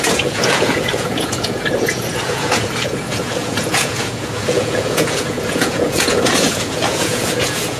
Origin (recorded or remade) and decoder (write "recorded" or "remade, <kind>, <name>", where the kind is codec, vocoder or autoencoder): remade, vocoder, Vocos